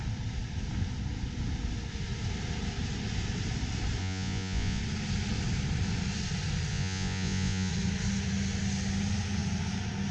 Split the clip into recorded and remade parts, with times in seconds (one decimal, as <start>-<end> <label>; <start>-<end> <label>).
0.0-4.0 recorded; 4.0-4.8 remade; 4.8-6.7 recorded; 6.7-7.7 remade; 7.7-10.1 recorded